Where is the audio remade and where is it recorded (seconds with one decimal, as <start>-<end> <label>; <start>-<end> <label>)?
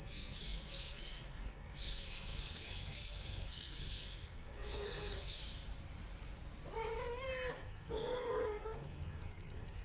0.0-5.4 remade; 5.4-7.5 recorded; 7.5-9.8 remade